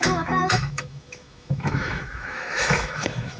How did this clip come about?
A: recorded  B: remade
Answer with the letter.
B